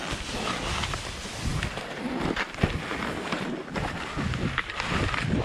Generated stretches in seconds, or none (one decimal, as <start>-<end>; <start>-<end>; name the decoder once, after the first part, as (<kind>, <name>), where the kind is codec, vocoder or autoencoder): none